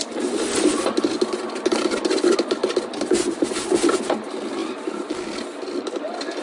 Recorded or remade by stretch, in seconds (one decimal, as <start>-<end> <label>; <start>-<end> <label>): 0.0-4.6 recorded; 4.6-5.3 remade; 5.3-6.4 recorded